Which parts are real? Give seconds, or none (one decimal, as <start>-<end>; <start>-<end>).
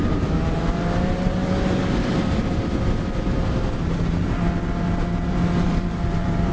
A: 1.4-5.3